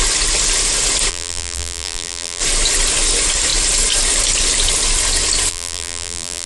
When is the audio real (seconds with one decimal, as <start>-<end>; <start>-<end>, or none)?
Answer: 0.0-1.1; 2.4-5.5